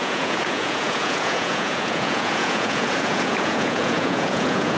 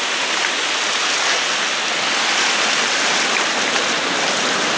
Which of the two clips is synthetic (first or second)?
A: first